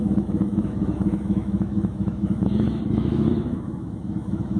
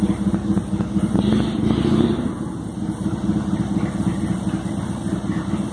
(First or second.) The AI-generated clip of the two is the first